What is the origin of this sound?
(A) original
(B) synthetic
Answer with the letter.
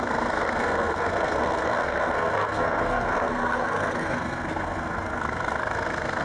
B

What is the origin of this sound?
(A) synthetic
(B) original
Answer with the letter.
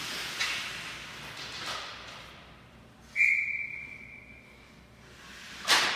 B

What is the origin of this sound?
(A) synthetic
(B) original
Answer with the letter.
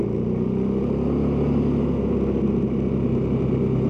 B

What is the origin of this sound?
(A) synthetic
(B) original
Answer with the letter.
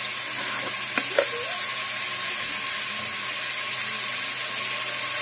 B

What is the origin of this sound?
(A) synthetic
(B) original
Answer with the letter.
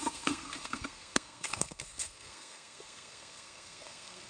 A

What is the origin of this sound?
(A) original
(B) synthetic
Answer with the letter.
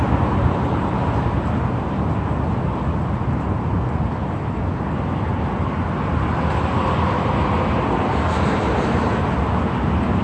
A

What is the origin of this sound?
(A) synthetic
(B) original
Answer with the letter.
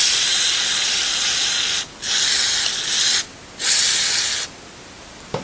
B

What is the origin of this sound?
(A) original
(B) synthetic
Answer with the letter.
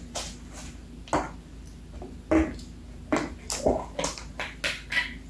A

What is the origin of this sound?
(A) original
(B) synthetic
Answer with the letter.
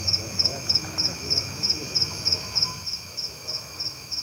B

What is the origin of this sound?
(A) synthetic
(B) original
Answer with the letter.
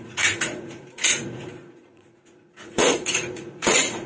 A